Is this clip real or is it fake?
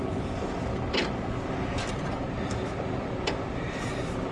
real